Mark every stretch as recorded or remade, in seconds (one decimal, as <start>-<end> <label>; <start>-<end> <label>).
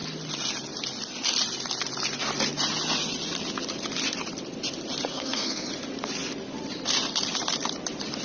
0.0-5.1 recorded; 5.1-5.7 remade; 5.7-8.2 recorded